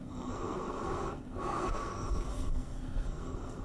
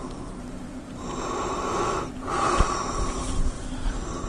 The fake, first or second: first